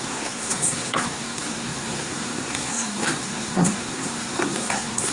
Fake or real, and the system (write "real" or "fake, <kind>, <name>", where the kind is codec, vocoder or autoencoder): fake, codec, SNAC